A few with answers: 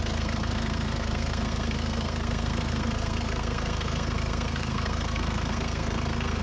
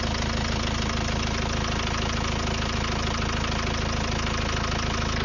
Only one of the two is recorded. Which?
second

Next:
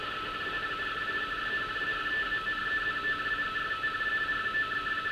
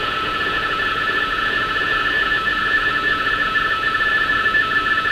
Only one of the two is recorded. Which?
first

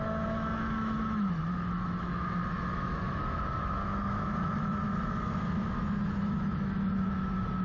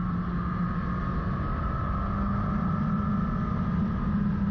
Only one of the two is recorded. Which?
second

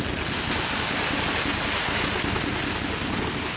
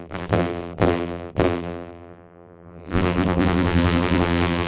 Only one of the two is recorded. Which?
first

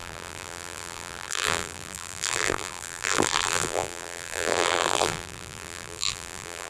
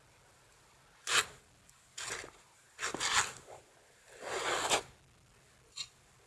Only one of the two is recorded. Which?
second